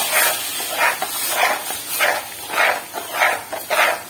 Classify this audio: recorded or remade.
recorded